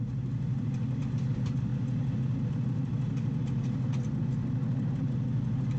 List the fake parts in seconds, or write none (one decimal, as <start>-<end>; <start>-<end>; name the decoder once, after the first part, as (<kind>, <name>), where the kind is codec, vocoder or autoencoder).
none